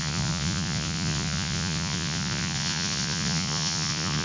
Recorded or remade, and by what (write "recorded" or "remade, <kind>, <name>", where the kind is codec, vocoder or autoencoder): remade, vocoder, Vocos